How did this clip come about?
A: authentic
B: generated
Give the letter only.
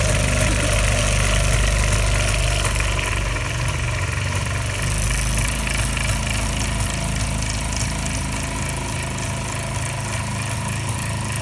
A